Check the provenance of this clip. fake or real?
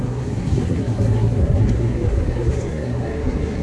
fake